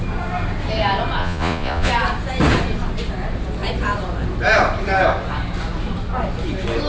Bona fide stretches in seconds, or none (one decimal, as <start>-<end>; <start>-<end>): 0.0-1.2; 1.9-6.9